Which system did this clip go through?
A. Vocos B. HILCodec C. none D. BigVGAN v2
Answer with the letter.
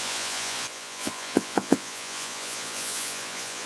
A